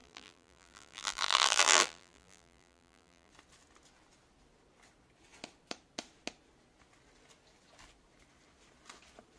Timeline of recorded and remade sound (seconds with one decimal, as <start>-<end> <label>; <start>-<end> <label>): 0.0-3.3 remade; 3.3-9.4 recorded